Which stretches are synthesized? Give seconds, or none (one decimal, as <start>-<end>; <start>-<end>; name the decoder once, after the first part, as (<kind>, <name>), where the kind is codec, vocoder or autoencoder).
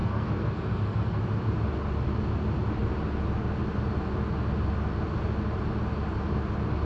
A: 0.0-1.2 (codec, SNAC)